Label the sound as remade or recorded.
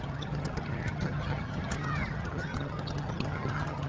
remade